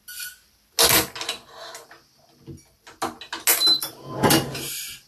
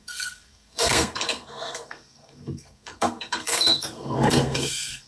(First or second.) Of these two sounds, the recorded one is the first